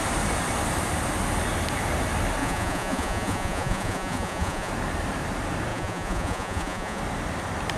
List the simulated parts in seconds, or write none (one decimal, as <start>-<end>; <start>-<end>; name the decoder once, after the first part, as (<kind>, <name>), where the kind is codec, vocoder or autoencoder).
2.4-4.7 (vocoder, Vocos); 5.7-7.0